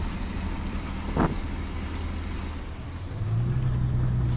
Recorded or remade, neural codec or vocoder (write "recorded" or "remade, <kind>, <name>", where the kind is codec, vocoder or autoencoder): recorded